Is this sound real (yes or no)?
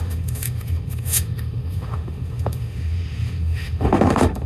no